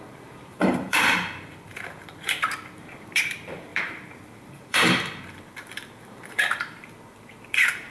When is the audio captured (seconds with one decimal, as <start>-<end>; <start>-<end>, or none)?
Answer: none